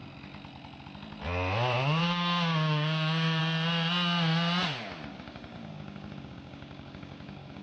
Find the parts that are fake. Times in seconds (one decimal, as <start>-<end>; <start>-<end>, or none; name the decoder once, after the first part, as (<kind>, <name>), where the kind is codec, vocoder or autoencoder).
2.0-3.4 (codec, DAC); 5.1-7.6